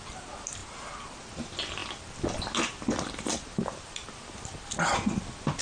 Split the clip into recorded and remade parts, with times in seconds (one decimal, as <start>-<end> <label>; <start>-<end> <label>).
0.0-5.6 recorded